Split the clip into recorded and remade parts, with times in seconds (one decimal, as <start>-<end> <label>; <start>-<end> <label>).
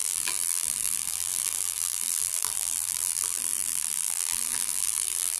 0.0-5.4 remade